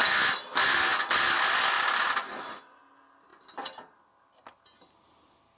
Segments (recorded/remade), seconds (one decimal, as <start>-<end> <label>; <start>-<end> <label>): 0.0-5.6 recorded